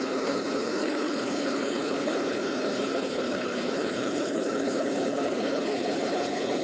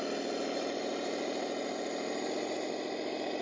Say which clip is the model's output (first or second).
first